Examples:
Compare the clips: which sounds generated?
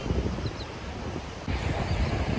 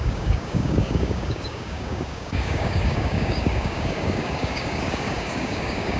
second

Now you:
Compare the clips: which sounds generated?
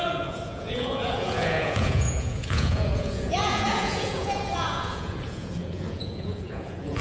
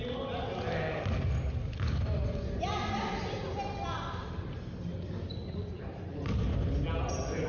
first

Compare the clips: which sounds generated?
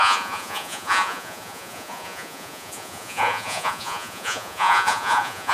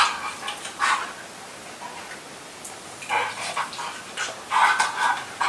first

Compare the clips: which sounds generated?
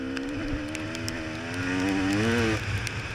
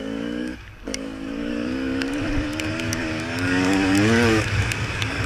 second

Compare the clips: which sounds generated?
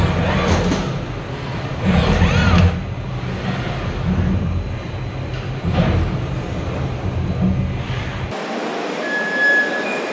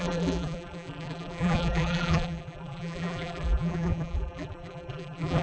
second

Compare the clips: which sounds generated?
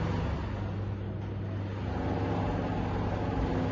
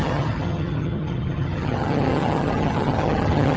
second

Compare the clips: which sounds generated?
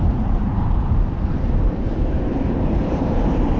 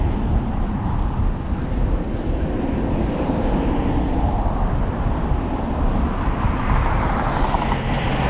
first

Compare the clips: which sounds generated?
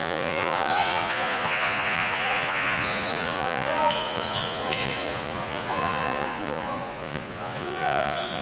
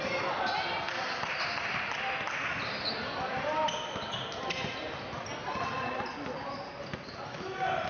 first